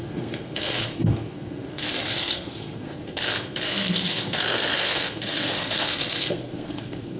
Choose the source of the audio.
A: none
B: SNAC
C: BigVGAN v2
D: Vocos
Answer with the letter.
B